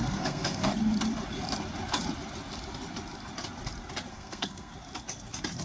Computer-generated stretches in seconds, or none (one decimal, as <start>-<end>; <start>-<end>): 0.0-0.7; 4.1-4.7

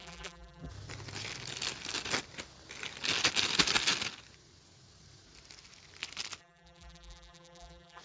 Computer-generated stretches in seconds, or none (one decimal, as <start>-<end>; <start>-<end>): 0.0-0.7; 6.4-8.0

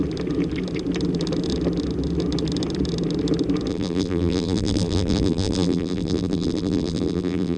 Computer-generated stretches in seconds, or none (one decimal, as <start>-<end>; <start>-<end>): 3.7-7.6

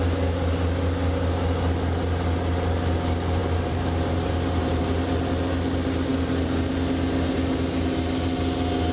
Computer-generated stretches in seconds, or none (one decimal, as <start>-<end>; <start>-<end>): 3.4-4.8

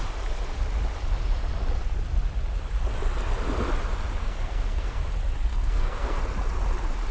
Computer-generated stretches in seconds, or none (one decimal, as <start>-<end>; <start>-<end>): 4.2-5.0; 5.5-6.2